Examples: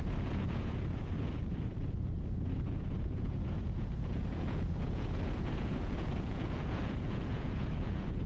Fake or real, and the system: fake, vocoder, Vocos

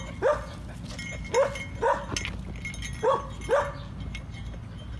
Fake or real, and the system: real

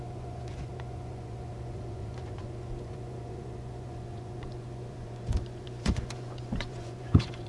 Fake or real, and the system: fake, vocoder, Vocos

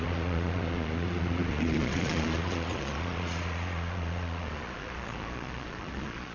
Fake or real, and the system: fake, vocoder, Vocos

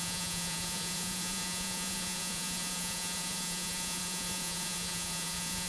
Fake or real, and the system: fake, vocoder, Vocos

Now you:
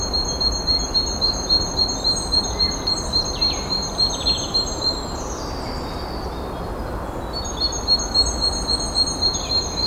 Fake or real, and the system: real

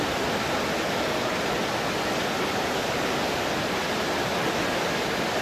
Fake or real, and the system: real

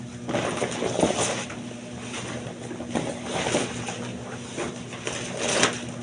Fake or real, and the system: real